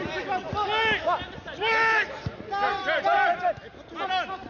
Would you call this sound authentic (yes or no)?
yes